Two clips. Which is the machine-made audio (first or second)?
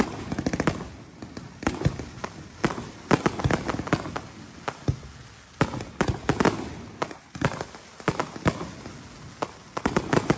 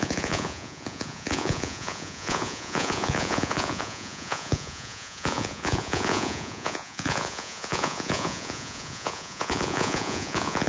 second